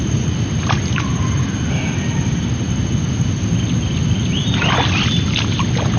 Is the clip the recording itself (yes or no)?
yes